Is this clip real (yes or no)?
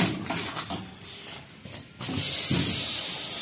yes